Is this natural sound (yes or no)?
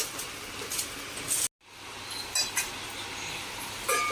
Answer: yes